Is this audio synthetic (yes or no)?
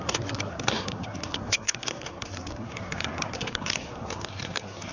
yes